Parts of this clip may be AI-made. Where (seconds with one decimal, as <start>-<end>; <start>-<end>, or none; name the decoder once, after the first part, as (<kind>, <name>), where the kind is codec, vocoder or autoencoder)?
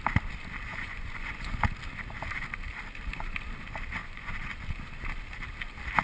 0.7-1.6 (vocoder, Vocos); 4.0-4.6